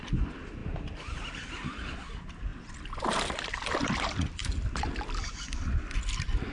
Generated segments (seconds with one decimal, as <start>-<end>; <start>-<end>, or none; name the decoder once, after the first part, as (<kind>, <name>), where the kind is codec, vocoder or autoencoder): none